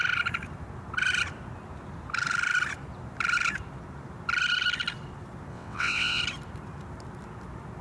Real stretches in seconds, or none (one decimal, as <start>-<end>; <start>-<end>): 0.0-5.5; 6.2-7.8